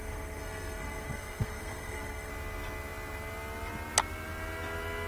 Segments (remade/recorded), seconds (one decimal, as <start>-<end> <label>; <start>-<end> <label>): 0.0-2.3 remade; 2.3-5.1 recorded